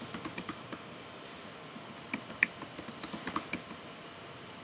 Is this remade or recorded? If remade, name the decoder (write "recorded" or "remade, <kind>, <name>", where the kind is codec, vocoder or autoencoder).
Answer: recorded